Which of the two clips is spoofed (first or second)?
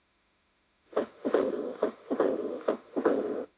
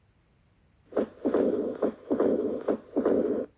first